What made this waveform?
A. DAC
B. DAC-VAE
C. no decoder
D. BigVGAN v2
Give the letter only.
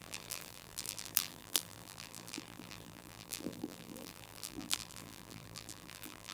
D